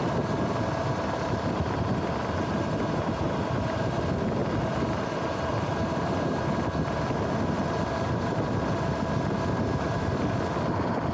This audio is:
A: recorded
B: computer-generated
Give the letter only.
A